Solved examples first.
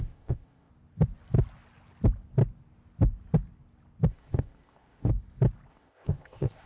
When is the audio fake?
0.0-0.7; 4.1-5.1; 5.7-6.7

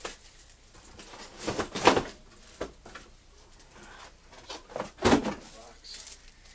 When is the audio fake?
none

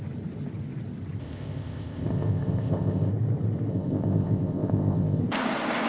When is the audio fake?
1.2-3.1; 3.7-5.2

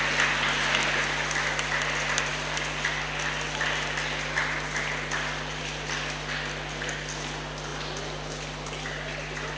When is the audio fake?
none

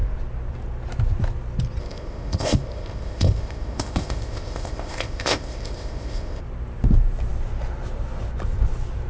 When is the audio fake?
1.8-6.4

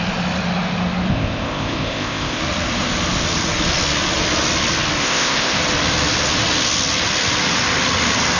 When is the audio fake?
1.1-2.4; 5.0-5.6